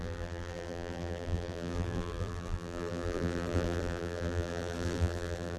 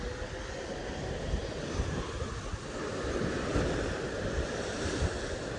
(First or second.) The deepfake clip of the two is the first